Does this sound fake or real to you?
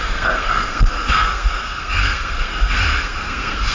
fake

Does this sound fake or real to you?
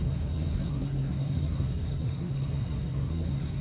fake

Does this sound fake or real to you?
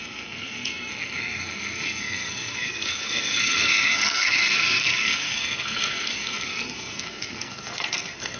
fake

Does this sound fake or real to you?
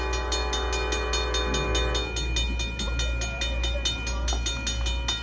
real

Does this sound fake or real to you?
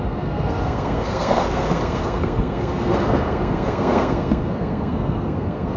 fake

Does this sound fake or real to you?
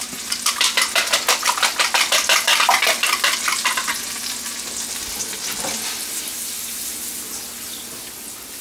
real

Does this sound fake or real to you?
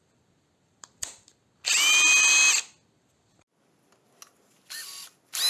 real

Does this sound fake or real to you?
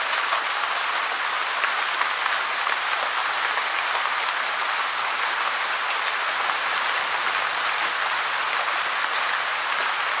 real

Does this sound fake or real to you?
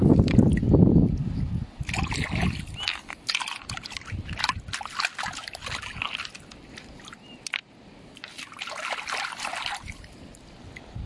real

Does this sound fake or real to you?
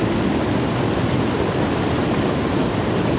real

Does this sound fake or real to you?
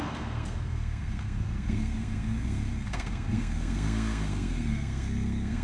fake